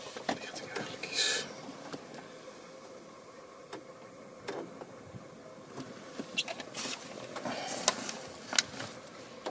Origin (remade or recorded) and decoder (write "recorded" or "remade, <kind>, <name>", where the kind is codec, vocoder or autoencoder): recorded